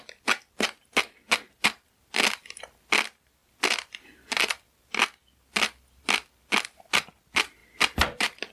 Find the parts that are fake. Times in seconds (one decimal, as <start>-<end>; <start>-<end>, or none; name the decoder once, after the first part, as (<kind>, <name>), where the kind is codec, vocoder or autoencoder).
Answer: 7.6-8.5 (vocoder, BigVGAN v2)